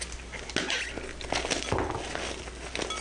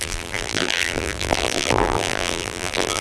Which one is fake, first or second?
second